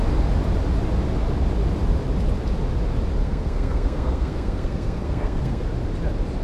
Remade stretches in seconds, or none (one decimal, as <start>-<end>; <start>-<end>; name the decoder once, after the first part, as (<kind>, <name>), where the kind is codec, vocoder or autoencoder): 3.2-5.6 (codec, SNAC)